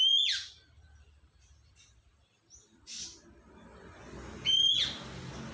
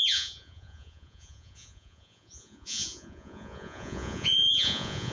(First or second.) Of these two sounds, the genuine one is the first